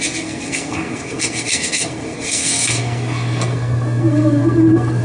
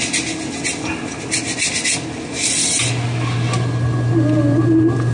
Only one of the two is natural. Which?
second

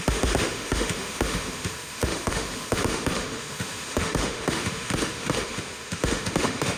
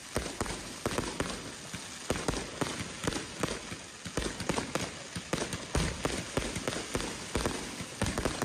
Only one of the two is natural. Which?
second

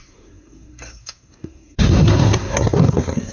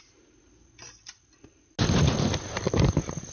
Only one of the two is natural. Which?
second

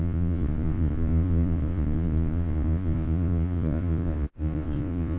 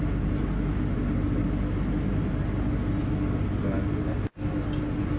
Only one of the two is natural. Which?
second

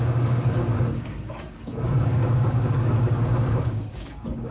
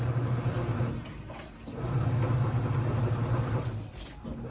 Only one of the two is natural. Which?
second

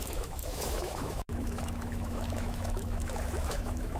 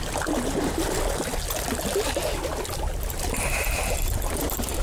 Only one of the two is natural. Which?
second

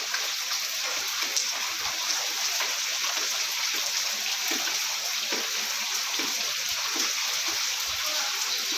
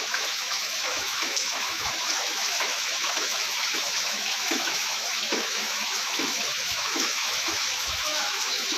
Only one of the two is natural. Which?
first